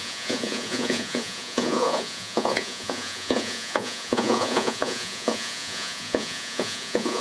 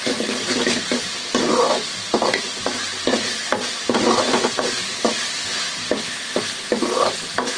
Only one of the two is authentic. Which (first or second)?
second